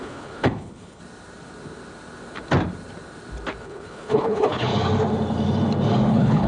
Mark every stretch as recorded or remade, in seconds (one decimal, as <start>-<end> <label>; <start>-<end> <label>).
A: 0.0-1.0 remade; 1.0-3.6 recorded; 3.6-4.7 remade; 4.7-6.1 recorded; 6.1-6.5 remade

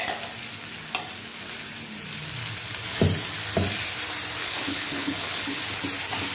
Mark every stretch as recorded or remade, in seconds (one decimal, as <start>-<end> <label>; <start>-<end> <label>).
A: 0.0-4.4 recorded; 4.4-5.6 remade; 5.6-6.3 recorded

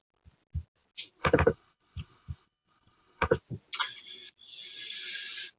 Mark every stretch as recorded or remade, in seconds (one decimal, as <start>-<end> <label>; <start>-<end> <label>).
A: 0.0-1.2 recorded; 1.2-3.4 remade; 3.4-5.6 recorded